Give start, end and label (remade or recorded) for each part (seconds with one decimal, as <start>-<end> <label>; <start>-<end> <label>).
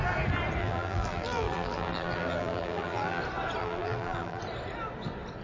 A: 0.0-0.6 recorded; 0.6-3.2 remade; 3.2-3.6 recorded; 3.6-4.4 remade; 4.4-5.4 recorded